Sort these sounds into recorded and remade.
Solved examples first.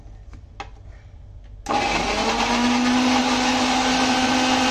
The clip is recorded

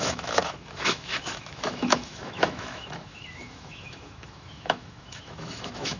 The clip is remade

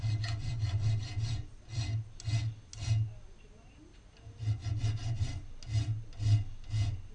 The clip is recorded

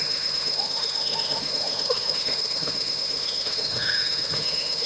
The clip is remade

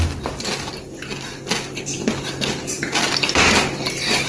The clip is recorded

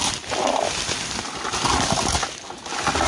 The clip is recorded